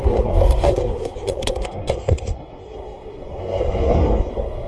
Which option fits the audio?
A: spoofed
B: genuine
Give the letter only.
A